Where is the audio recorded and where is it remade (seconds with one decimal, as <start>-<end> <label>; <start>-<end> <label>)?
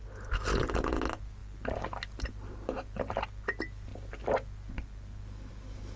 0.0-6.0 recorded